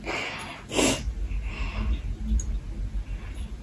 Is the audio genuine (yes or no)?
yes